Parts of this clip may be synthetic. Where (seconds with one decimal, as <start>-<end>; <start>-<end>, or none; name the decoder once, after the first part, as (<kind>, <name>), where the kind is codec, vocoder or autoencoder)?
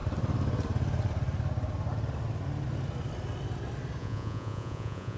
4.0-5.2 (vocoder, Vocos)